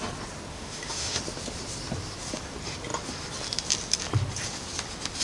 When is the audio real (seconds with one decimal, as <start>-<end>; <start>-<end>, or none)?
0.0-0.5; 1.2-5.2

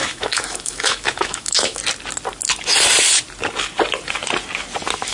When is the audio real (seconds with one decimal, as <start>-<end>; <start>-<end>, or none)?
1.8-5.1

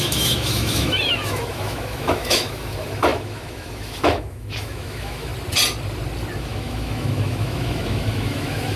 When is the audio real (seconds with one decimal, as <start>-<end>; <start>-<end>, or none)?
5.3-6.4